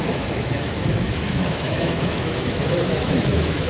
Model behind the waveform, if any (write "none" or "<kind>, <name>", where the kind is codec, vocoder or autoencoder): autoencoder, DAC-VAE